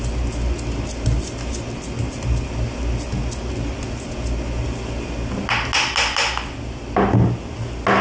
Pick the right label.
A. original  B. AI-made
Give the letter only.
A